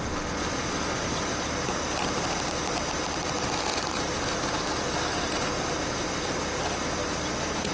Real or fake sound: real